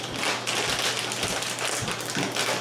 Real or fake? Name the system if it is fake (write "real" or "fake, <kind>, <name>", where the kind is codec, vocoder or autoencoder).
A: real